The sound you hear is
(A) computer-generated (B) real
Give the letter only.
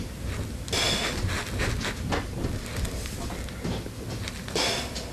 B